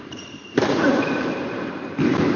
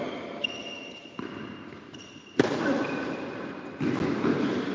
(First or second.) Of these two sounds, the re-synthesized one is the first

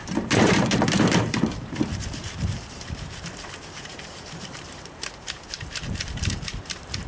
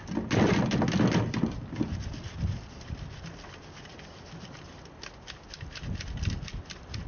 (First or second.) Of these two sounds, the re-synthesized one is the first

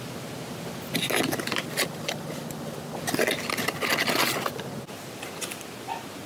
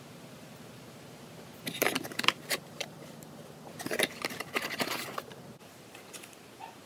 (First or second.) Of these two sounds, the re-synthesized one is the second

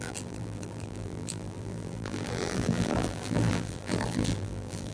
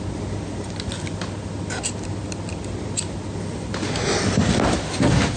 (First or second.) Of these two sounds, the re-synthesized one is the first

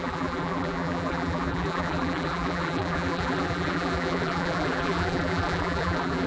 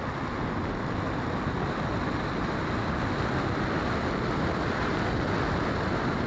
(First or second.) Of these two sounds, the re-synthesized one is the first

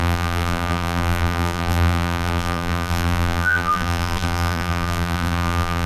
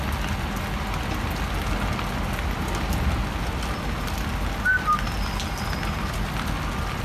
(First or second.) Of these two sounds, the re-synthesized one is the first